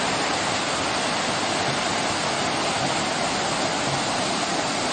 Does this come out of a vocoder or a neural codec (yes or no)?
no